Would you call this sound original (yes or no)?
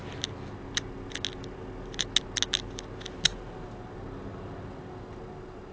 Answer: yes